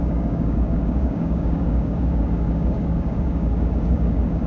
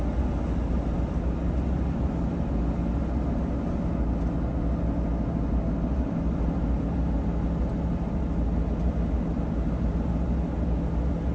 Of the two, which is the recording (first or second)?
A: second